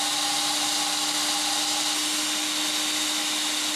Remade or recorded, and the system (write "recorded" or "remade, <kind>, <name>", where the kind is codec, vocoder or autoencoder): recorded